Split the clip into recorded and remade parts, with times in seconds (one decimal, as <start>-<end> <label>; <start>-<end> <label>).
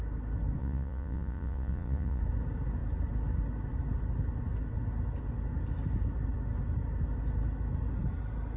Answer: 0.0-0.6 recorded; 0.6-2.2 remade; 2.2-8.6 recorded